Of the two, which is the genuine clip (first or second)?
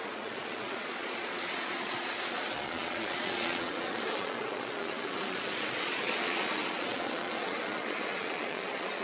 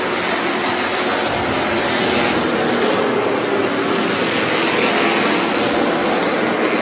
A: second